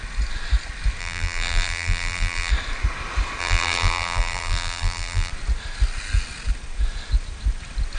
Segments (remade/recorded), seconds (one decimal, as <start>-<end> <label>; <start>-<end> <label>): 0.0-1.0 recorded; 1.0-2.5 remade; 2.5-3.4 recorded; 3.4-5.3 remade; 5.3-8.0 recorded